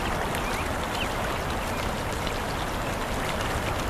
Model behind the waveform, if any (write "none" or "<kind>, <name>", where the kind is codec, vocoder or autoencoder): none